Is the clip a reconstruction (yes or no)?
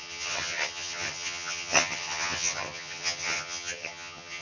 yes